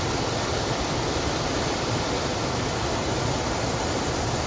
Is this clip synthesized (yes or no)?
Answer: no